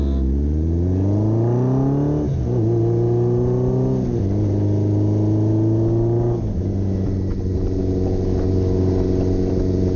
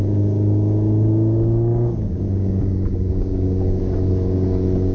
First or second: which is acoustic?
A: first